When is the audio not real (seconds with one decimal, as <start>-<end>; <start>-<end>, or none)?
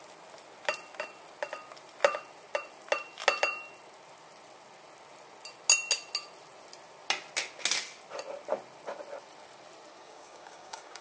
10.0-11.0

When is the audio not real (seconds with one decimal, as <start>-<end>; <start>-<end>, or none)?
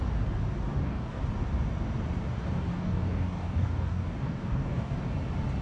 0.7-1.2; 2.7-4.9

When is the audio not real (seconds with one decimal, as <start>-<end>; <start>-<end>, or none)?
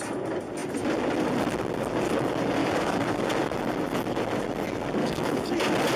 2.6-3.3; 5.0-5.5